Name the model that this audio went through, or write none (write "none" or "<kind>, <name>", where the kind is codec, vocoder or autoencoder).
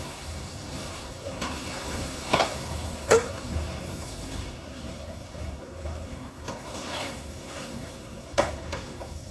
codec, SNAC